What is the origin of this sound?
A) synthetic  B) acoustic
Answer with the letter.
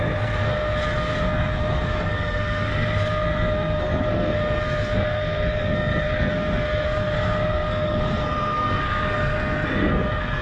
A